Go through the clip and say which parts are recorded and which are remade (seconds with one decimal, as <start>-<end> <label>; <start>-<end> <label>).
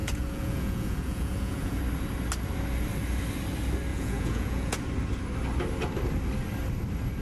0.0-1.8 remade; 1.8-3.9 recorded; 3.9-4.8 remade; 4.8-7.2 recorded